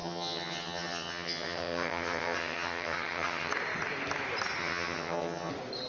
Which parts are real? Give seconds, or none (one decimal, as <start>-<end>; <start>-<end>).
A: 3.5-4.6; 5.5-5.9